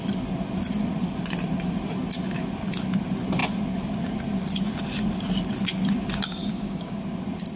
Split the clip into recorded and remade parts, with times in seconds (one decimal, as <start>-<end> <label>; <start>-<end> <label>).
0.0-6.4 recorded; 6.4-7.0 remade; 7.0-7.6 recorded